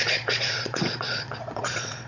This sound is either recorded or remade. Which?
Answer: remade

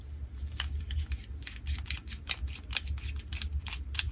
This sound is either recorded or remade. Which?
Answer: recorded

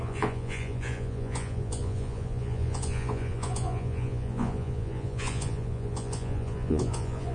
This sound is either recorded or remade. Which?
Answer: remade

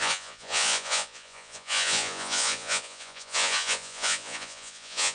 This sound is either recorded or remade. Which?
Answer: remade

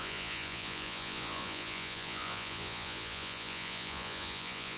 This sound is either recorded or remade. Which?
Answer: remade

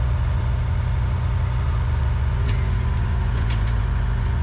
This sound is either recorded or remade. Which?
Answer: remade